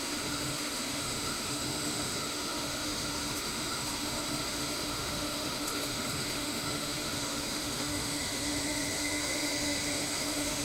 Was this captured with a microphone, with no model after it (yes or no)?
no